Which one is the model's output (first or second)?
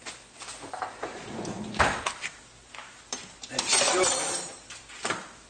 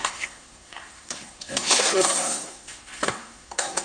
second